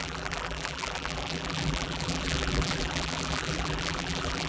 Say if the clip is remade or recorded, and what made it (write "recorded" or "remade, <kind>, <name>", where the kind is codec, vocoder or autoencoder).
remade, vocoder, BigVGAN v2